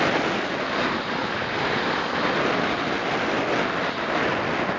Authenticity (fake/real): real